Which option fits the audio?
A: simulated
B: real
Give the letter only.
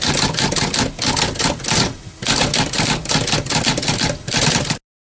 B